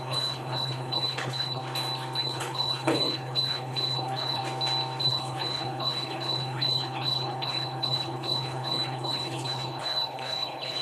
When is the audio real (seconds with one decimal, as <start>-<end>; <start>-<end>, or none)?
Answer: 1.6-2.2; 4.4-5.0